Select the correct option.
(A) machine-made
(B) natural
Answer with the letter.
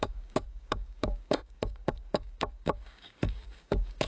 A